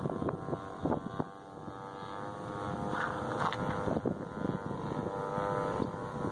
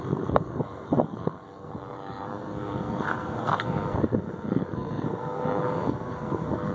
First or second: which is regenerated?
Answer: second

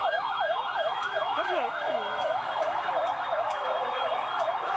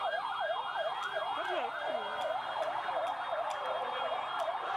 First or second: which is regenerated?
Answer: first